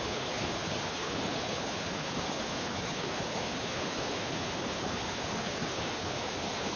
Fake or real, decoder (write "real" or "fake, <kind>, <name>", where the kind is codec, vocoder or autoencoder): fake, codec, HILCodec